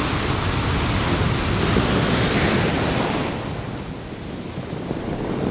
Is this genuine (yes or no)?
yes